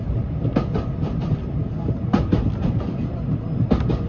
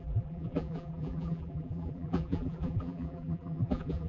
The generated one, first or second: second